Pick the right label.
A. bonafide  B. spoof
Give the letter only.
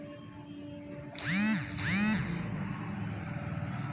A